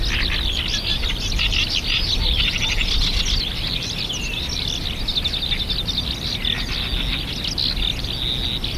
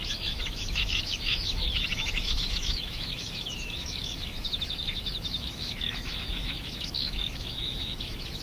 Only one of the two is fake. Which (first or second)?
second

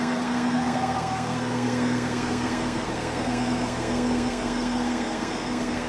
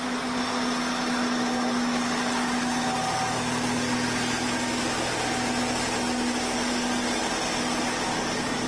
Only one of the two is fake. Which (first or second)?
first